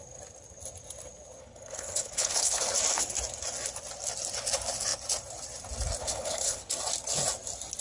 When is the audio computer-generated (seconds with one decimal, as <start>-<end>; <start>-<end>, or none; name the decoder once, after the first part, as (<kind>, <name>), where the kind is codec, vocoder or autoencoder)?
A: 1.4-2.6 (codec, HILCodec); 6.0-6.7